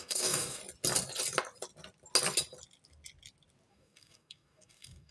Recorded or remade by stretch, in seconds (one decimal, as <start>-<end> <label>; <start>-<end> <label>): 0.0-0.6 remade; 0.6-3.7 recorded; 3.7-5.1 remade

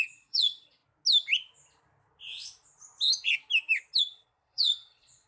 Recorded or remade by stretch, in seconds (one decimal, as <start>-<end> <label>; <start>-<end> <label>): 0.0-0.8 remade; 0.8-4.0 recorded; 4.0-5.3 remade

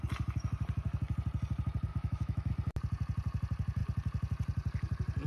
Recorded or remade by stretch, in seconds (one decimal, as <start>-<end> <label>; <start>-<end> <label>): 0.0-1.9 recorded; 1.9-2.5 remade; 2.5-5.3 recorded